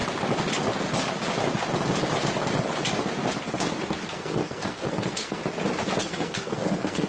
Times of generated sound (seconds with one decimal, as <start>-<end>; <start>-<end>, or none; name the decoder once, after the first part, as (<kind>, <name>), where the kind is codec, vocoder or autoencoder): 4.1-5.4 (codec, SNAC); 6.0-7.1